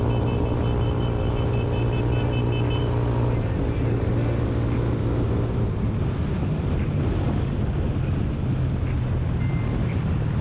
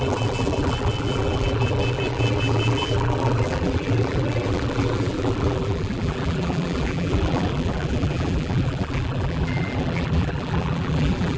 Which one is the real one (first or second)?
first